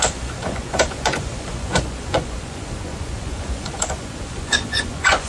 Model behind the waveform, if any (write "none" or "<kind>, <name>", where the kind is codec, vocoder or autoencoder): vocoder, Vocos